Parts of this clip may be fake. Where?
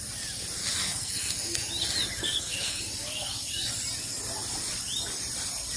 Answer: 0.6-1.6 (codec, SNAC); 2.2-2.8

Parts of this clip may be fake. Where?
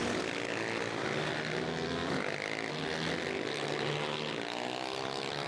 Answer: none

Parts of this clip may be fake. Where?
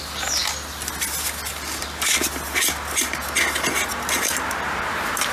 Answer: none